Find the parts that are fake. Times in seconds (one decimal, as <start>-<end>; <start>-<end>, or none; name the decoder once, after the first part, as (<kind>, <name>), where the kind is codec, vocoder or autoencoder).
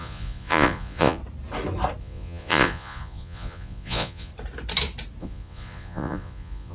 0.0-1.2 (vocoder, Vocos); 2.0-4.3; 5.2-6.7